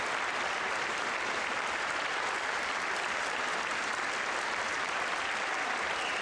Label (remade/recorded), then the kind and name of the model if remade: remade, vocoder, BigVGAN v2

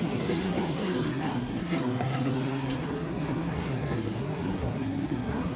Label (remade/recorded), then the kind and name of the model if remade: remade, codec, SNAC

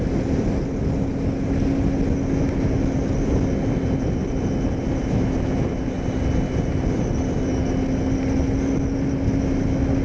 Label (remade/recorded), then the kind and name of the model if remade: recorded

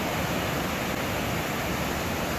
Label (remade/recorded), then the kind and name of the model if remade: recorded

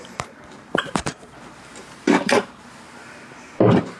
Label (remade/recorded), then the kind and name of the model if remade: remade, vocoder, BigVGAN v2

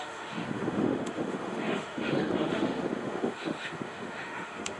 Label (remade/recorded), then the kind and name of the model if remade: remade, autoencoder, DAC-VAE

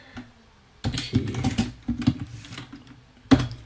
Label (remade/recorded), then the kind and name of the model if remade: recorded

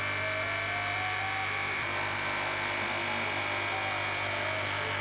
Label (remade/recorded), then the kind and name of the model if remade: recorded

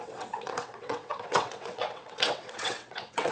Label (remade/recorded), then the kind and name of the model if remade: remade, vocoder, WaveNeXt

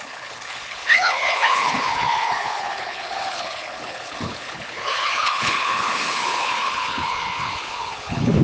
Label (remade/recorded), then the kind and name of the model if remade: remade, codec, HILCodec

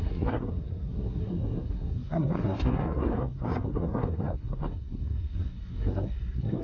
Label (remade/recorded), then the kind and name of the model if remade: remade, codec, SNAC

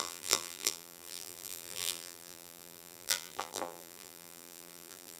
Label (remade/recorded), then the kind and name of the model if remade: remade, vocoder, BigVGAN v2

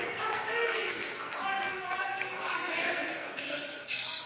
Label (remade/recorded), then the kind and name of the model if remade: remade, codec, SNAC